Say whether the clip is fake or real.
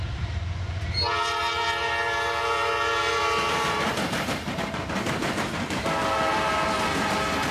fake